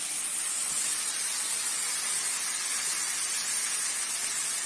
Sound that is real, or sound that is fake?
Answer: real